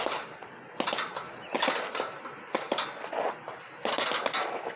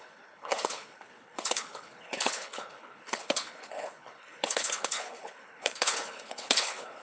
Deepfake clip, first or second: second